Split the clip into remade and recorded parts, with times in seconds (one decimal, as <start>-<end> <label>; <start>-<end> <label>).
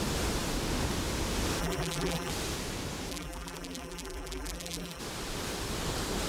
0.0-1.6 recorded; 1.6-2.3 remade; 2.3-3.1 recorded; 3.1-5.0 remade; 5.0-6.3 recorded